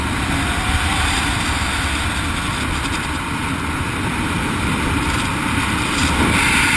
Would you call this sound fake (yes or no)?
no